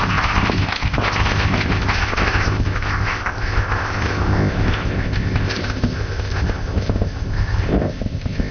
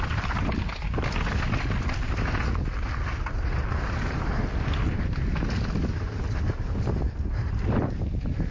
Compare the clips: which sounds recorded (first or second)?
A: second